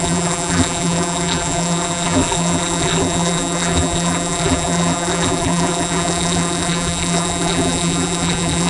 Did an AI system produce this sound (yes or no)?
yes